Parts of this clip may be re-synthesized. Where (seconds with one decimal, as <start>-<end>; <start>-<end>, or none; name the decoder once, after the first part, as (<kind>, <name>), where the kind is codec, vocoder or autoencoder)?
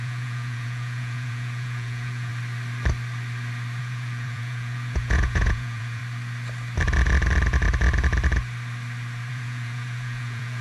0.0-2.3 (vocoder, Vocos); 3.8-6.0; 9.3-10.6